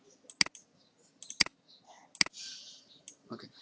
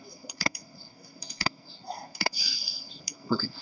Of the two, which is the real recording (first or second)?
first